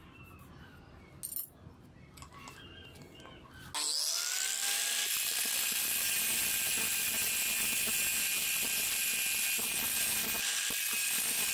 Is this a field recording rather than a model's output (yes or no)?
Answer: yes